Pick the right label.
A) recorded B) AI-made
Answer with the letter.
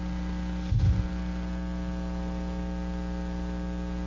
A